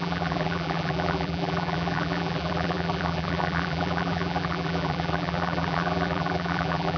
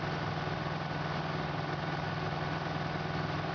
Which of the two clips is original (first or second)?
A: second